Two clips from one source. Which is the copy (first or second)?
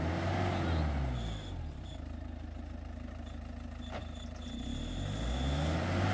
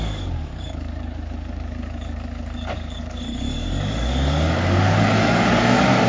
second